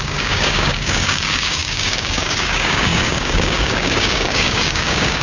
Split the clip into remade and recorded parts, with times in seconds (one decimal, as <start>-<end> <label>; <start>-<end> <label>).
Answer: 0.0-5.2 remade